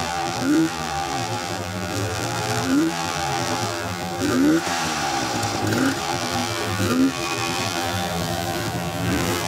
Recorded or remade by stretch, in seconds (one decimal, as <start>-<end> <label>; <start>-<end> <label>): 0.0-4.5 remade; 4.5-6.0 recorded; 6.0-9.5 remade